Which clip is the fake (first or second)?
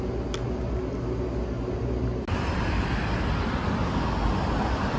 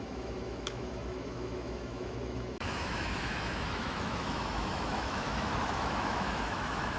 second